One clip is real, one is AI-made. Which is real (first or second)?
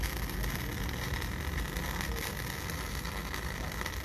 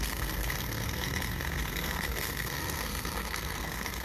first